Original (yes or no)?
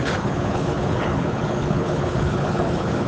no